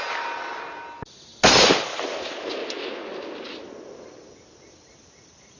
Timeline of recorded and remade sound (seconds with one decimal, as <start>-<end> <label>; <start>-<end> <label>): 0.0-5.6 recorded